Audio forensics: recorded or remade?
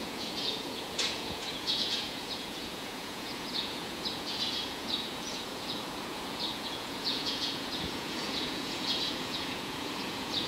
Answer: remade